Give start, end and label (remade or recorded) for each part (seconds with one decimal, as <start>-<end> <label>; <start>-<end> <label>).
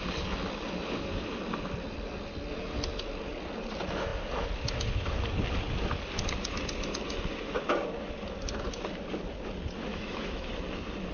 0.0-9.9 recorded; 9.9-10.5 remade; 10.5-11.1 recorded